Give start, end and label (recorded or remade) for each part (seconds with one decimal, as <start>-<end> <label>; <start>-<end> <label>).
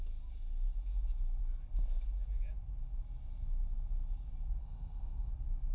0.0-4.6 recorded; 4.6-5.3 remade; 5.3-5.7 recorded